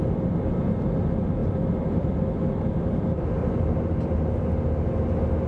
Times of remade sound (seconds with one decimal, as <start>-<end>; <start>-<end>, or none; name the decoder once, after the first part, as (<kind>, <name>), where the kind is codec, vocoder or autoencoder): 1.4-2.6 (vocoder, BigVGAN v2); 3.4-4.4